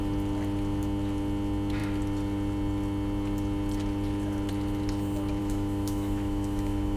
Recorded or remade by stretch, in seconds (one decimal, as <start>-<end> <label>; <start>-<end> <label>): 0.0-5.4 recorded; 5.4-7.0 remade